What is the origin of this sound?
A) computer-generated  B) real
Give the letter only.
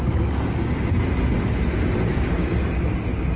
B